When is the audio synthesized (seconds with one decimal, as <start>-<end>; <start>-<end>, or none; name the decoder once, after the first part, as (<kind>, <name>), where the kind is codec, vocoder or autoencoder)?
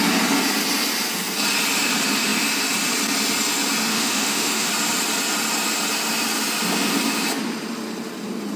3.9-4.7 (autoencoder, DAC-VAE)